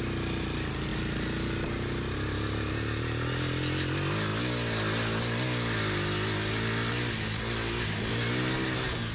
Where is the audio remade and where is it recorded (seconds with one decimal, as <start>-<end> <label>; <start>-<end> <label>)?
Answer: 0.0-9.1 recorded